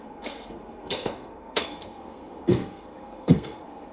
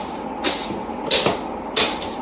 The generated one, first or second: first